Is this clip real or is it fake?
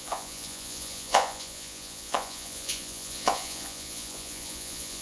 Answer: fake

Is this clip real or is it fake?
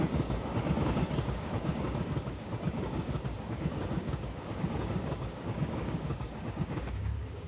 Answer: fake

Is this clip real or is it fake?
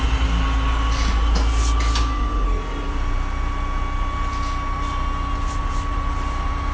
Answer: real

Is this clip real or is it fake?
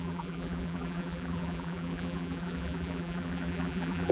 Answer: fake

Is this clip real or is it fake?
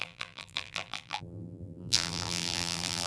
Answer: fake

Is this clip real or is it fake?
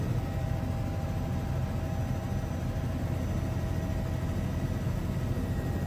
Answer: real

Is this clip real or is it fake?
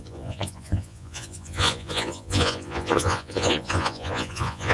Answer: fake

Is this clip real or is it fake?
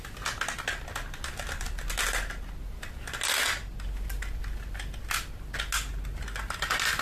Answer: real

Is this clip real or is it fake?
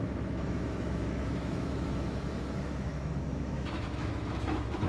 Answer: fake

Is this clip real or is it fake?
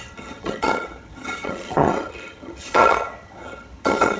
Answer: fake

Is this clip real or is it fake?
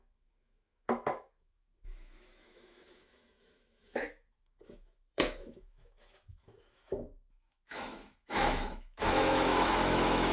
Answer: fake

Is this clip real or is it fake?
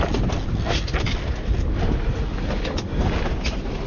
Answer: real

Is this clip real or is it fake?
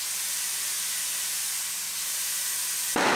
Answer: fake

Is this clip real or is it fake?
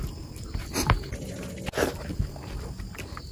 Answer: real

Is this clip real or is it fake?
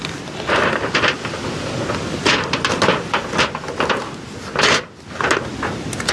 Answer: real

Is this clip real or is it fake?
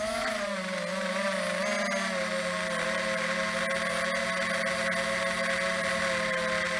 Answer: real